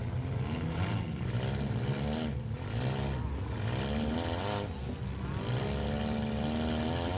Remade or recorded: recorded